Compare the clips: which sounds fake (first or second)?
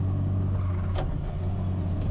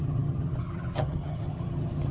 second